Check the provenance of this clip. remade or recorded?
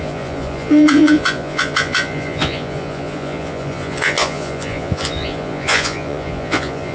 remade